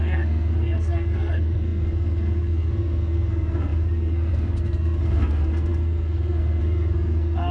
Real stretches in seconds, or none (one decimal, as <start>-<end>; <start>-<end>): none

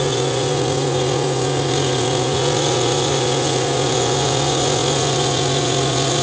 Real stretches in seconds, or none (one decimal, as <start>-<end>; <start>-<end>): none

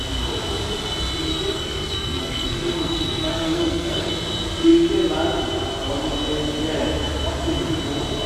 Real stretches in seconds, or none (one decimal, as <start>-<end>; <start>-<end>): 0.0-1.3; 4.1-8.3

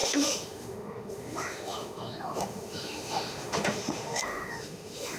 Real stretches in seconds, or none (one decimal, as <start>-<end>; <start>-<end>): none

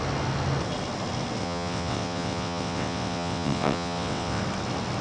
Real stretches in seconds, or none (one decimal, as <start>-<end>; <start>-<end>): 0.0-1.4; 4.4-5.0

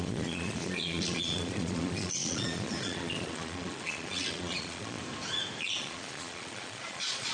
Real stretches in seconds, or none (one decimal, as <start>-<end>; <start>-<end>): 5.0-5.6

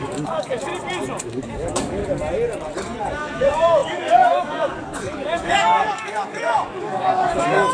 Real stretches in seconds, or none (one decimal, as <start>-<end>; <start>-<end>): 0.7-1.2; 2.0-3.0

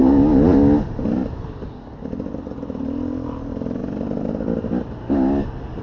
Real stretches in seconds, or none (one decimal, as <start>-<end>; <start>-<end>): 0.0-5.8